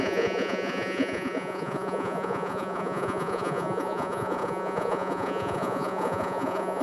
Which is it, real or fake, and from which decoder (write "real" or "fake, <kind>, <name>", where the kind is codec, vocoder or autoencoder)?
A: fake, vocoder, Vocos